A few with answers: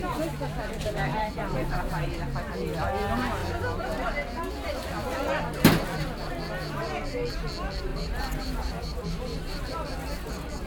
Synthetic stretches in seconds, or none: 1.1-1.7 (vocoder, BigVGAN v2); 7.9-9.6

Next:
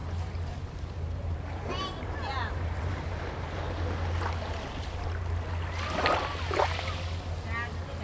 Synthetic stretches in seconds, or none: 0.0-3.3 (vocoder, BigVGAN v2)

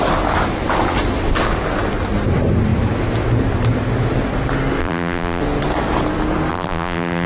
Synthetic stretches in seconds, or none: 4.8-5.4 (vocoder, BigVGAN v2); 6.5-7.3

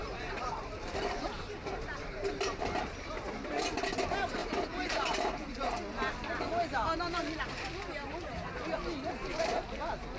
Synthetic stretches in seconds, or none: 0.0-3.6 (vocoder, BigVGAN v2)